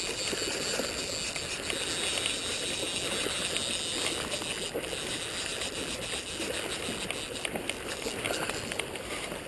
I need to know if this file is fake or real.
real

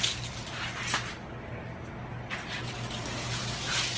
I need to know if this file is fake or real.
real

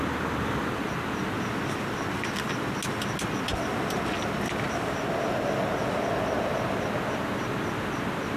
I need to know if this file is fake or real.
real